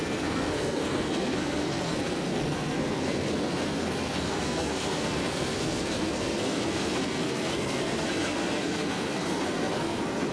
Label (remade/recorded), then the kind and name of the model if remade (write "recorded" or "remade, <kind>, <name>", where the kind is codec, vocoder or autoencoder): remade, codec, SNAC